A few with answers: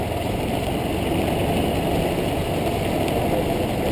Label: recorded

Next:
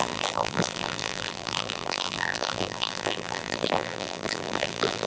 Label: remade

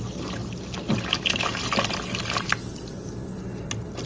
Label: recorded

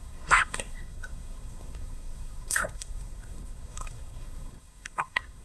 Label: remade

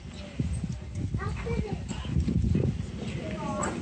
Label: recorded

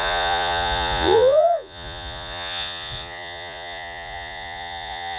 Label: remade